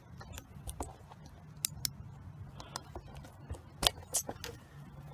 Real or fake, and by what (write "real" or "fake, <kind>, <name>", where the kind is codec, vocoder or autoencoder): real